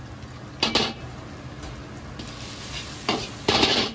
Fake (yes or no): no